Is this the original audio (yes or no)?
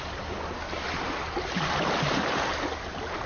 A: yes